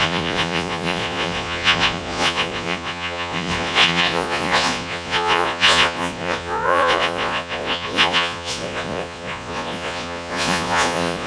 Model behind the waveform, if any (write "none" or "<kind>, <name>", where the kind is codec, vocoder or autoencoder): vocoder, Vocos